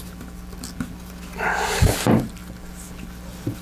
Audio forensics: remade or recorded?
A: recorded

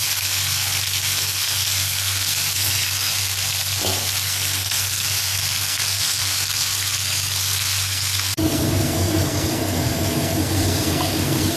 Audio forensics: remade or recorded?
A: remade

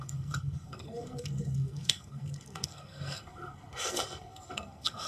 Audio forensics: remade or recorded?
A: remade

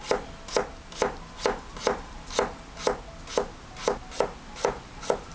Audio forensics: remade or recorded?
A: recorded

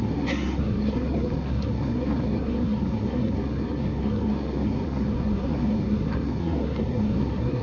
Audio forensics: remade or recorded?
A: remade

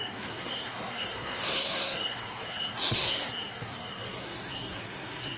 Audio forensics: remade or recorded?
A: remade